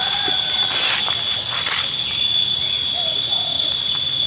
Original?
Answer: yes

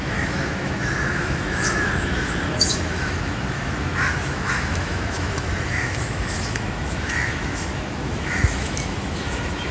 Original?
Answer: no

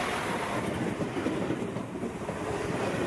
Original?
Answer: yes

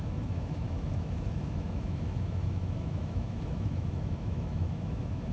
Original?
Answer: no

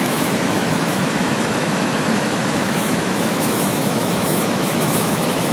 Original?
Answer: no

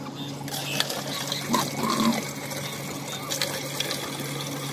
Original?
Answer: yes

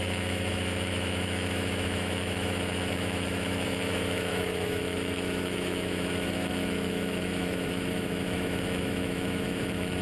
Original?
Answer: no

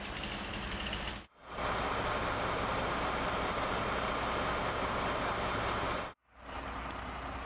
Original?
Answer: yes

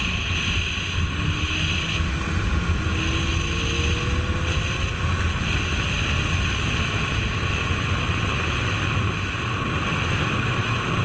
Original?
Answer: yes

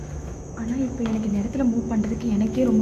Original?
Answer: no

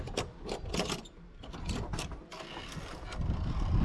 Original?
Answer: yes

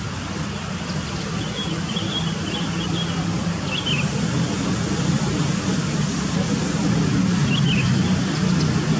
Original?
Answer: yes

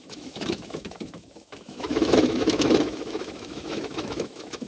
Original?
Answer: no